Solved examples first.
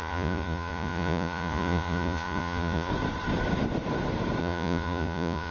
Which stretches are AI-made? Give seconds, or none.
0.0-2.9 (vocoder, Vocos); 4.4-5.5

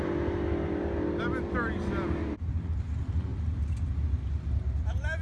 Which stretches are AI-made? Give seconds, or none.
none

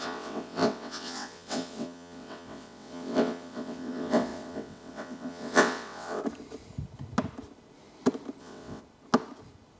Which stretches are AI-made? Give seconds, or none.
0.0-6.2 (vocoder, WaveNeXt); 8.4-8.8

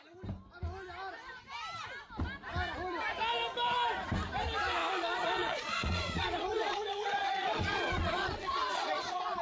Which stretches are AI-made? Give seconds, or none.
4.8-9.4 (vocoder, Vocos)